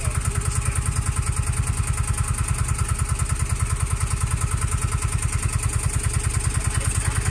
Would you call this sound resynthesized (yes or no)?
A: no